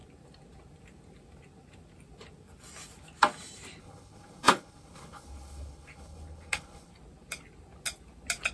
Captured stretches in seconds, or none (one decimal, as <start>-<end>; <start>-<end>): 0.0-3.8; 6.9-8.5